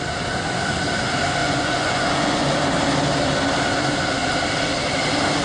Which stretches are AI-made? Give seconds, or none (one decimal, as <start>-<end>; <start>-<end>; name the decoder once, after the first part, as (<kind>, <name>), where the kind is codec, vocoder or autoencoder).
1.4-2.5 (vocoder, Vocos)